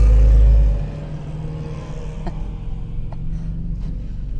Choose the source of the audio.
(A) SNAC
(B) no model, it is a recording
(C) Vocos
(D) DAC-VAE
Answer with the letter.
B